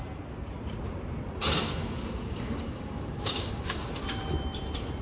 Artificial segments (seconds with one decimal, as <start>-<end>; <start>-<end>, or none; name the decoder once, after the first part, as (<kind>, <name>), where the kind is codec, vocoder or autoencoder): 1.6-3.9 (codec, DAC)